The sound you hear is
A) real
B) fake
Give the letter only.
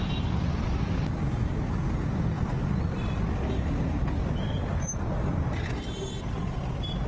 A